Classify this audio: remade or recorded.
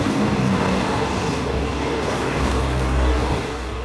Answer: remade